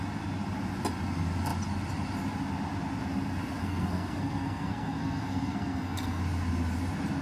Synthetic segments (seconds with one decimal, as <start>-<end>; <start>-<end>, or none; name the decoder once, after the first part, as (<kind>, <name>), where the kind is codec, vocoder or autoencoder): 3.6-6.2 (codec, SNAC)